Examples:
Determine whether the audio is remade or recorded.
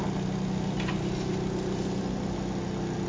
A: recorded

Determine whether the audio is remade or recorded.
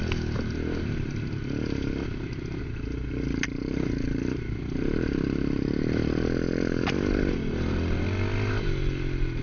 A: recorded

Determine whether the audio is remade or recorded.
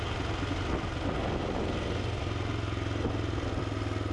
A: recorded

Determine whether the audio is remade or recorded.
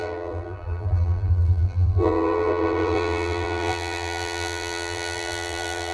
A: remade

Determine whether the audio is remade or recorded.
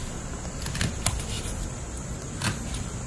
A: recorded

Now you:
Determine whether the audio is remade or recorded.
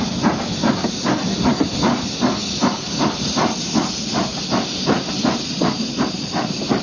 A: recorded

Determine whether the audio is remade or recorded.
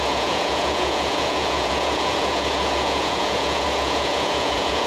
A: remade